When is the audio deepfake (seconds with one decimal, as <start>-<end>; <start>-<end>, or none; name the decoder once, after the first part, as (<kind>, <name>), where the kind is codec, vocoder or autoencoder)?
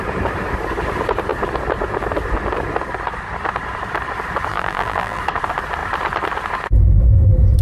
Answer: 4.5-5.2 (vocoder, BigVGAN v2)